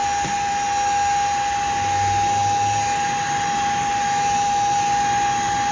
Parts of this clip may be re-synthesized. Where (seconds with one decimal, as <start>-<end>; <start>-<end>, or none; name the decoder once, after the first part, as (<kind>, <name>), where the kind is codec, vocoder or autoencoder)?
none